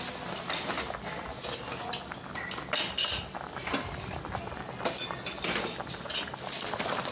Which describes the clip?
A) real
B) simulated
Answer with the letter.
A